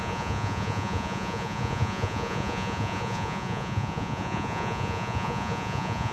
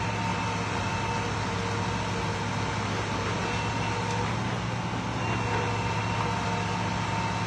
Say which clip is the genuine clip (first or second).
second